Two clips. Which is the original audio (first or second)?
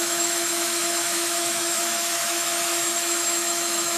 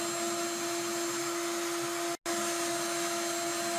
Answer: second